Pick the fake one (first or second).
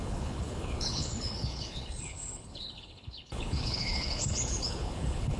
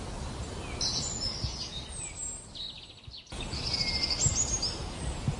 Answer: first